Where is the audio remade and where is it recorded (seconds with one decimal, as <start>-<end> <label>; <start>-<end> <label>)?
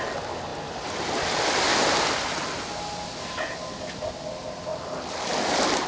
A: 0.0-5.9 recorded